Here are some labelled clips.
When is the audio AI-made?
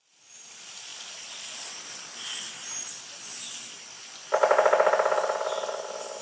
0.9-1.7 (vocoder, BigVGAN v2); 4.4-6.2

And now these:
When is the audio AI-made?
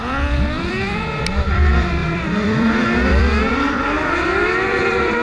0.0-5.2 (vocoder, BigVGAN v2)